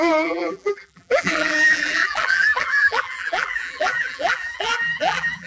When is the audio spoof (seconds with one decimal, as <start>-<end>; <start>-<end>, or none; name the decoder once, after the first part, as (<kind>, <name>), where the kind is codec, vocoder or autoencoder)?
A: 0.0-5.5 (vocoder, BigVGAN v2)